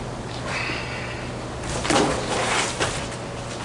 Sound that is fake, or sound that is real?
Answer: real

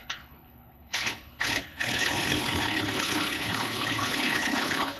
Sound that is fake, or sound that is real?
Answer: fake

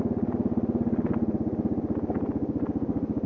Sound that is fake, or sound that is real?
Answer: real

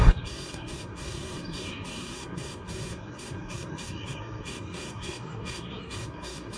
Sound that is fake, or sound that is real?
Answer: fake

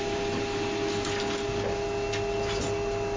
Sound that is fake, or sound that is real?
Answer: real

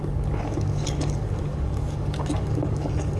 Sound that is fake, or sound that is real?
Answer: fake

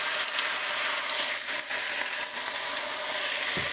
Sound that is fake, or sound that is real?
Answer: real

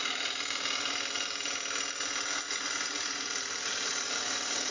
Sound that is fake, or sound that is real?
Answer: real